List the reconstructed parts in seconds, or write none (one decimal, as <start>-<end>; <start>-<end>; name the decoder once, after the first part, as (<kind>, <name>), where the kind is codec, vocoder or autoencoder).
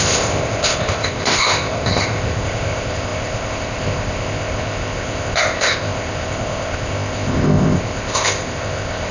0.0-9.1 (codec, ZipCodec)